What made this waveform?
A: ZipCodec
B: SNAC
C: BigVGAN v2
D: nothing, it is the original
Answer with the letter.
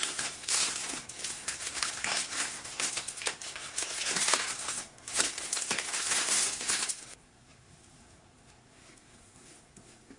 B